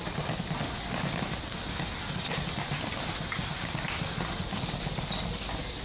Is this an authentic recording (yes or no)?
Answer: yes